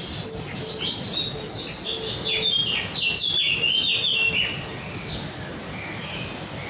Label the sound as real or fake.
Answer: real